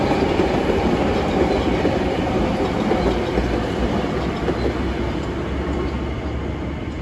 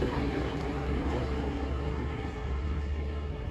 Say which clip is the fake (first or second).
second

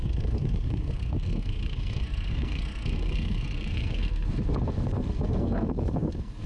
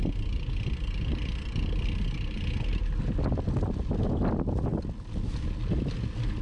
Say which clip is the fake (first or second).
first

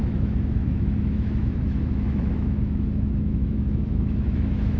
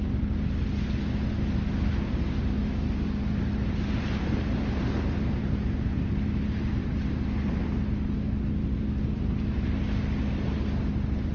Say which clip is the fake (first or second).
first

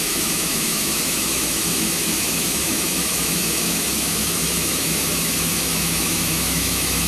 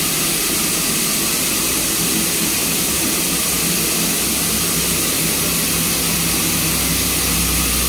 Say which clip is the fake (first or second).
first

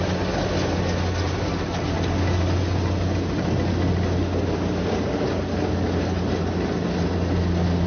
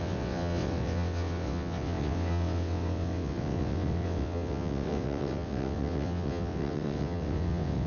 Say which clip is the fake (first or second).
second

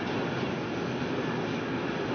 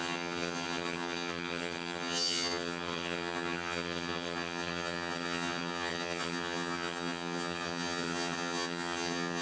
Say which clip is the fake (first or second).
second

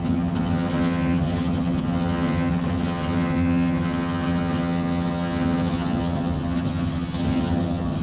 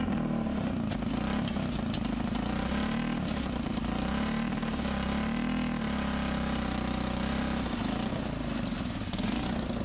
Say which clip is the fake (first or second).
first